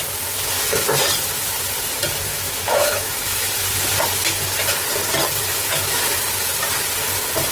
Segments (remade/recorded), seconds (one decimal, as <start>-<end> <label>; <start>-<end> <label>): 0.0-2.3 recorded; 2.3-3.5 remade; 3.5-5.4 recorded; 5.4-6.0 remade; 6.0-7.5 recorded